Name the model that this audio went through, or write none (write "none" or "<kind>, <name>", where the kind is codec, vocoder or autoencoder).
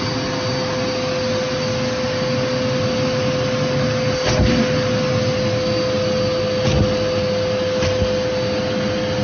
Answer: none